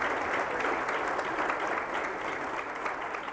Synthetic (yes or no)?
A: no